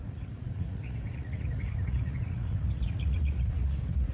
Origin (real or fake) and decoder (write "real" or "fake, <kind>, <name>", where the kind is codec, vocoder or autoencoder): fake, vocoder, Vocos